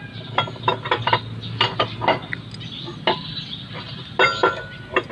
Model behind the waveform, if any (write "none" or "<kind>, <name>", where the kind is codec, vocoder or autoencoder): none